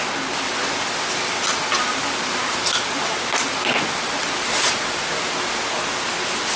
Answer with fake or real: real